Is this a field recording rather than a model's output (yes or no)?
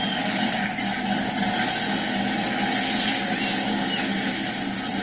yes